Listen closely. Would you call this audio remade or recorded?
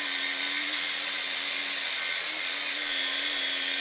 recorded